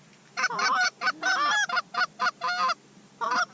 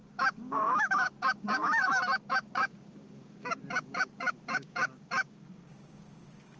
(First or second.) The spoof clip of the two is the second